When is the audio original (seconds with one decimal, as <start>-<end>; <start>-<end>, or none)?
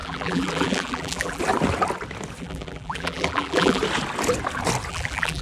1.4-2.4; 3.8-4.9